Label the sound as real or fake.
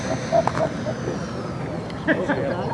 real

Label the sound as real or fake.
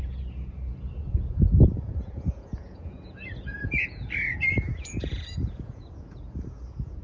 fake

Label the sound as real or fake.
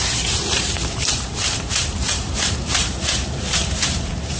fake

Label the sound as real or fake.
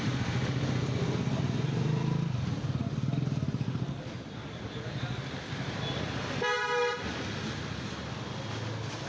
real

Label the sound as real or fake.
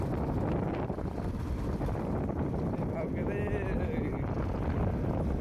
real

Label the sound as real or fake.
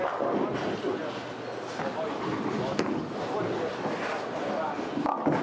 real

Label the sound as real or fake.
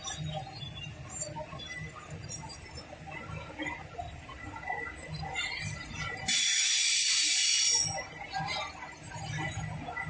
real